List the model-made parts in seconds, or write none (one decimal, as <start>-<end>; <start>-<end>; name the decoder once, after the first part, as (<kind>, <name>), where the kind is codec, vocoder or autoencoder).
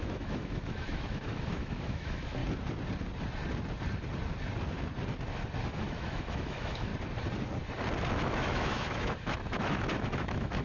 0.0-2.4 (autoencoder, DAC-VAE); 5.7-6.9; 8.1-10.6